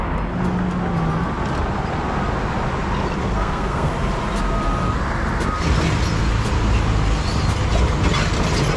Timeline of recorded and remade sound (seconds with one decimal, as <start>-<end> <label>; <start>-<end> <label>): 0.0-3.2 recorded; 3.2-3.9 remade; 3.9-8.8 recorded